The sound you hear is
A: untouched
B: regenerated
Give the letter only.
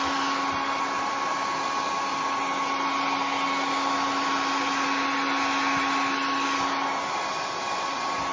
A